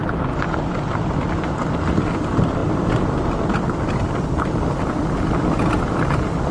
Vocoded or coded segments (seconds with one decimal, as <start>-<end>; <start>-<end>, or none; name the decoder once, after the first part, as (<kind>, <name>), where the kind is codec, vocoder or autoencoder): none